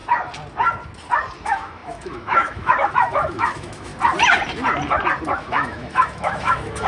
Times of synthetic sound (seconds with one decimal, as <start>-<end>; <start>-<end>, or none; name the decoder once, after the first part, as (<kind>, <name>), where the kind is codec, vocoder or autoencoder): 1.4-3.9 (autoencoder, DAC-VAE); 5.4-6.9